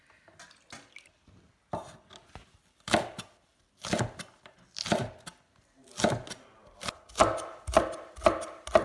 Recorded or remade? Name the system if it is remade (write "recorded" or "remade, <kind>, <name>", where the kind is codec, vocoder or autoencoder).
recorded